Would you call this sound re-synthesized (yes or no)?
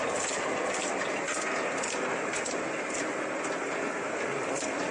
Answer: no